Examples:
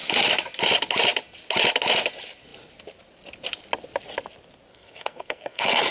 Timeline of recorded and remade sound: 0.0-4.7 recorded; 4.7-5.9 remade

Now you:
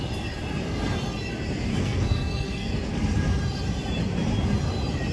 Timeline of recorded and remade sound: 0.0-1.7 recorded; 1.7-2.7 remade; 2.7-5.1 recorded

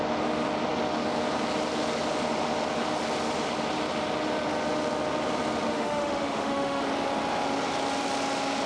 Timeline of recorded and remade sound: 0.0-5.7 recorded; 5.7-6.8 remade; 6.8-8.7 recorded